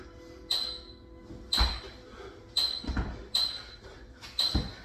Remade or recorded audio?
recorded